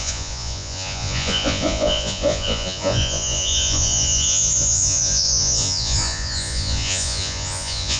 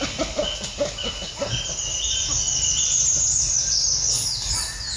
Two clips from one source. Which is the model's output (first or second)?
first